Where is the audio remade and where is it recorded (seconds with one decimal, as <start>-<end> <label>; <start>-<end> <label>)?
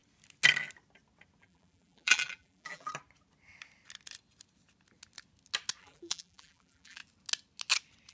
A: 0.0-1.4 recorded; 1.4-2.9 remade; 2.9-5.8 recorded; 5.8-7.0 remade; 7.0-8.1 recorded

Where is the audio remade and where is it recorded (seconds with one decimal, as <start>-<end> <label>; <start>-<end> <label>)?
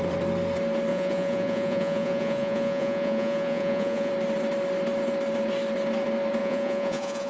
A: 0.0-0.9 recorded; 0.9-4.1 remade; 4.1-6.4 recorded; 6.4-7.3 remade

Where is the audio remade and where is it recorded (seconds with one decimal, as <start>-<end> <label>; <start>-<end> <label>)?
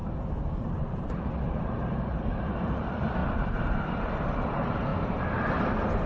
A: 0.0-0.7 recorded; 0.7-3.2 remade; 3.2-4.0 recorded; 4.0-4.9 remade; 4.9-6.1 recorded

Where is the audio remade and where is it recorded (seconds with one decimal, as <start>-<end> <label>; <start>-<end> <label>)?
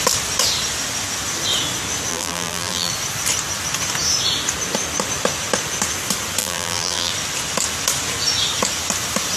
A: 0.0-2.1 recorded; 2.1-2.9 remade; 2.9-6.4 recorded; 6.4-7.1 remade; 7.1-9.4 recorded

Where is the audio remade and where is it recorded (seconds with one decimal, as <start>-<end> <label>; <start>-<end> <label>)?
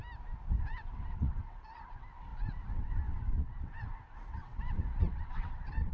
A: 0.0-0.6 recorded; 0.6-5.9 remade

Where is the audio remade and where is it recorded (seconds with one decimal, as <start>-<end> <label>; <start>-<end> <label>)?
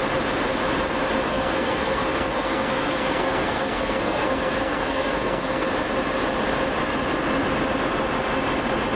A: 0.0-1.3 recorded; 1.3-5.7 remade; 5.7-9.0 recorded